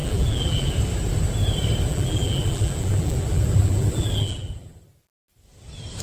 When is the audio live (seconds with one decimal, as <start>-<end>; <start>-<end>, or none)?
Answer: 0.7-1.9; 4.8-6.0